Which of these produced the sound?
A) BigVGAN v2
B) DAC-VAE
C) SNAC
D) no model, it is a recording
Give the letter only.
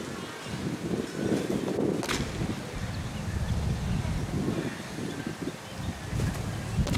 D